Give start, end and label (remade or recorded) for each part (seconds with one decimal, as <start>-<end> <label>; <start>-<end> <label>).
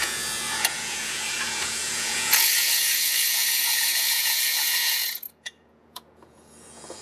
0.0-7.0 remade